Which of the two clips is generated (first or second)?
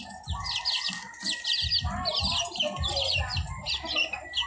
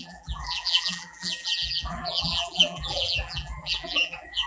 second